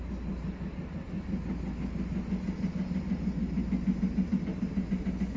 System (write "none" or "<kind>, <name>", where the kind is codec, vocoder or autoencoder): none